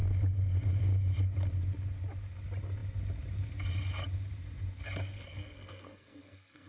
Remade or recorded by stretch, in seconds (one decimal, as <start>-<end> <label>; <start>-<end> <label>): 0.0-5.1 recorded; 5.1-6.7 remade